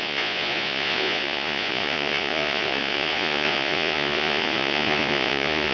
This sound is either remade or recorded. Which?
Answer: remade